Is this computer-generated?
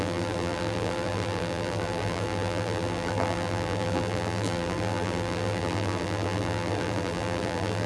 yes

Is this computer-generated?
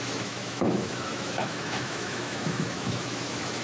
yes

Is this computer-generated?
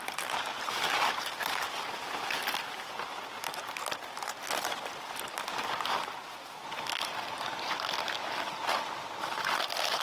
no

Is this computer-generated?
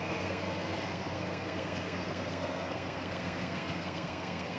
yes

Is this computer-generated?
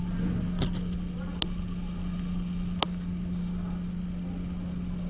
no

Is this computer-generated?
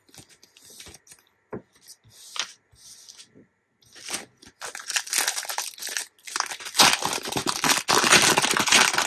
no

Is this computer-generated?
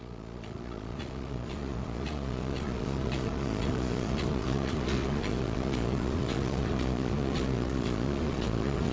yes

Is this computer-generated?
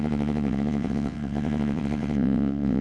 yes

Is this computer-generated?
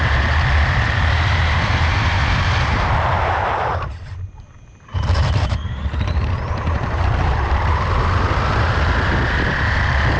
yes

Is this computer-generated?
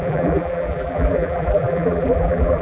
yes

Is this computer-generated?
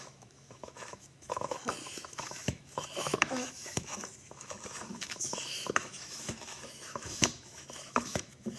yes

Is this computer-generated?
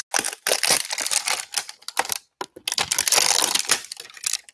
no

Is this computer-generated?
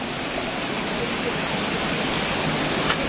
no